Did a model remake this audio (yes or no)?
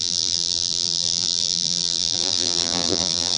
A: yes